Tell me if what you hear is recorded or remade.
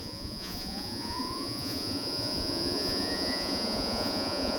remade